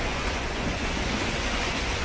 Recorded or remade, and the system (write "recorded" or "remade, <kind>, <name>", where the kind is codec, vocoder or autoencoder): remade, vocoder, Vocos